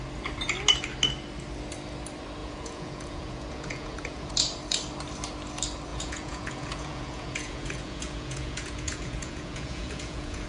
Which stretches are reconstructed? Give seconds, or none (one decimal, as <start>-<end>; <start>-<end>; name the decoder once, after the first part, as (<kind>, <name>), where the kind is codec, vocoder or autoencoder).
2.4-4.3 (vocoder, Vocos); 5.9-10.5